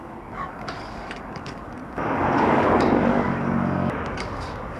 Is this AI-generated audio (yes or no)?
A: yes